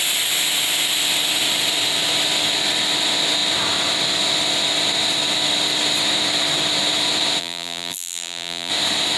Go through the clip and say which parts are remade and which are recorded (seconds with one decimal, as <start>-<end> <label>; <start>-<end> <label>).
0.0-7.4 recorded; 7.4-8.7 remade; 8.7-9.2 recorded